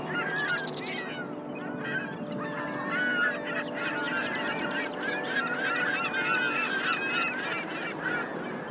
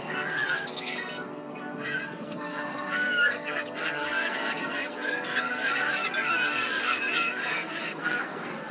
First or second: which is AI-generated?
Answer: second